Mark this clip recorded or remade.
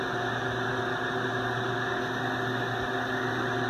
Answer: recorded